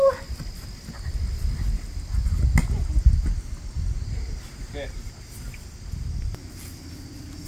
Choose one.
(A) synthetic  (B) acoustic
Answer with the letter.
B